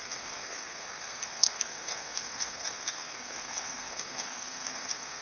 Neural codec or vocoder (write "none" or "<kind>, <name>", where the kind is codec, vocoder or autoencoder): codec, SNAC